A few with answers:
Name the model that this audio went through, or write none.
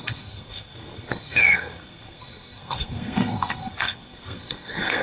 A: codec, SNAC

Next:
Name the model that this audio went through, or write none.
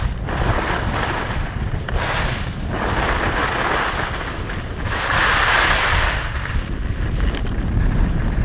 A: none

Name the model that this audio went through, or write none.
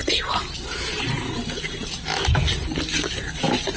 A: none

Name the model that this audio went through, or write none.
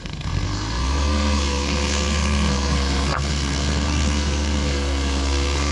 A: codec, SNAC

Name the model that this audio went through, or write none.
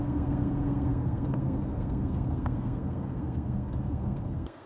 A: codec, SNAC